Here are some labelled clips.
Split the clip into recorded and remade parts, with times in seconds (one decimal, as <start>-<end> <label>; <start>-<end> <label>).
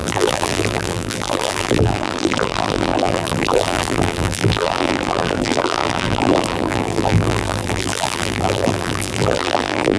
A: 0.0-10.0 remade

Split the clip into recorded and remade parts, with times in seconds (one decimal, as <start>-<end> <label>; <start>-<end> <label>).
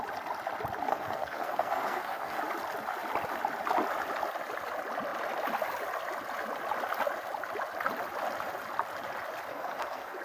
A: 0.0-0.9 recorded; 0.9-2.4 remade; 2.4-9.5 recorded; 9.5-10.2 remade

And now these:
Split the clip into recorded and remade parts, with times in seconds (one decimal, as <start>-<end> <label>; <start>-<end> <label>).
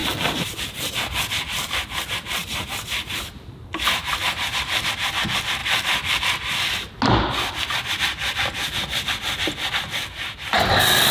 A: 0.0-0.9 remade; 0.9-2.4 recorded; 2.4-4.9 remade; 4.9-11.1 recorded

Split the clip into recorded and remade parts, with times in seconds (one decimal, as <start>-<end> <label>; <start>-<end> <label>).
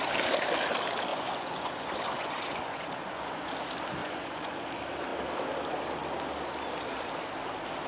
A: 0.0-1.1 recorded; 1.1-3.5 remade; 3.5-4.0 recorded; 4.0-4.5 remade; 4.5-7.9 recorded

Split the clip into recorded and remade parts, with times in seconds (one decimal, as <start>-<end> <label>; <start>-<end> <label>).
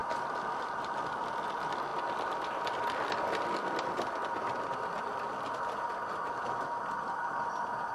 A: 0.0-7.9 recorded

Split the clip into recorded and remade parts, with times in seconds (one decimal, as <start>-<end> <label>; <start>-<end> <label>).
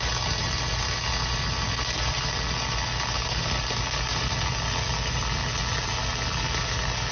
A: 0.0-7.1 recorded